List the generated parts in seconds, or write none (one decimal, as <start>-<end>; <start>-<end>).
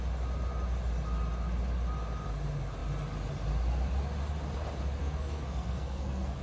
5.0-6.4